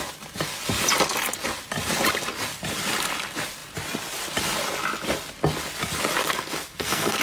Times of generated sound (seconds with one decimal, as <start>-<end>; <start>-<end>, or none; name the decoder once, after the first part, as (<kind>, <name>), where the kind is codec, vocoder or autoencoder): 6.2-7.2 (codec, SNAC)